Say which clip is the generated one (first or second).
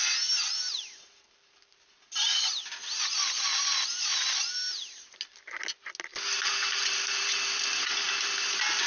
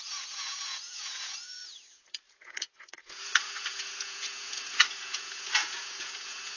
second